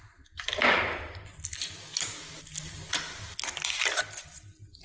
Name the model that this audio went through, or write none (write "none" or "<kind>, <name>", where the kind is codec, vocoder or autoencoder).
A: none